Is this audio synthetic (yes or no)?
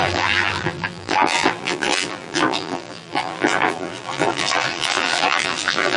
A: yes